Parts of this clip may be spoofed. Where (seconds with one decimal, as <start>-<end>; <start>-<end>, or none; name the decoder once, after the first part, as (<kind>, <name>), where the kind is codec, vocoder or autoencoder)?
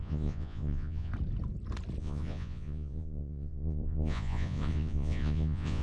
0.0-1.1 (vocoder, Vocos); 2.0-5.8